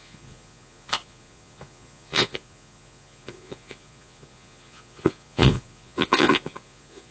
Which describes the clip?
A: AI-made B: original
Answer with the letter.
A